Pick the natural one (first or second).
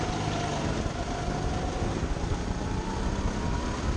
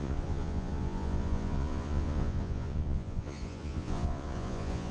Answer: first